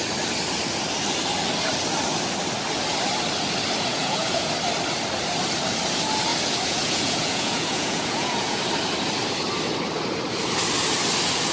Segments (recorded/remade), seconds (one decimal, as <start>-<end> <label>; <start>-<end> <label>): 0.0-3.9 recorded; 3.9-4.5 remade; 4.5-6.3 recorded; 6.3-8.6 remade; 8.6-11.5 recorded